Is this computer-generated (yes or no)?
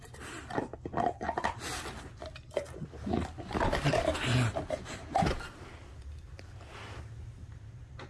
no